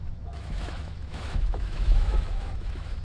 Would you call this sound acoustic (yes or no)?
no